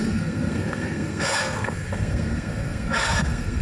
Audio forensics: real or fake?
fake